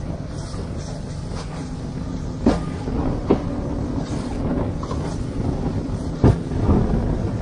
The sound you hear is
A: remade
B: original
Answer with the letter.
B